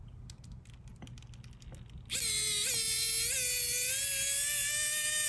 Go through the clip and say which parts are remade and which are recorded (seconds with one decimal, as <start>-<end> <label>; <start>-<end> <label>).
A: 0.0-5.3 recorded